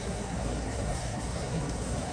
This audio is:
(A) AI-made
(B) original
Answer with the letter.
A